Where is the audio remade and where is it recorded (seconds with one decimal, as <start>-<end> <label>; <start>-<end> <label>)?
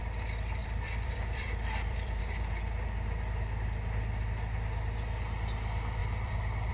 0.0-0.6 recorded; 0.6-2.2 remade; 2.2-6.0 recorded; 6.0-6.7 remade